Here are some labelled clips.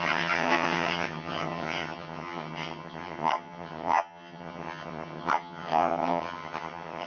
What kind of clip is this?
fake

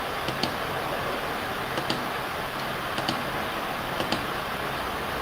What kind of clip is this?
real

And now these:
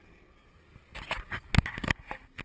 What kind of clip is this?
real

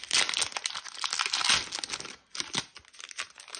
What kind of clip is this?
real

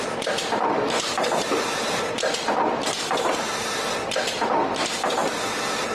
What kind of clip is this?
real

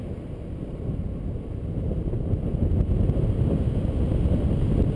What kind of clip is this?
real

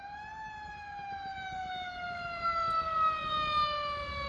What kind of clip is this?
real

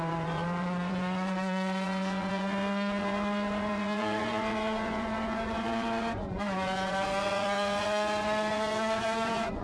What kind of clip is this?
fake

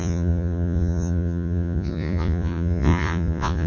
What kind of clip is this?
fake